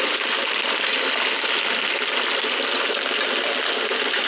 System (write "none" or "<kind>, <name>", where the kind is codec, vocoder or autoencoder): none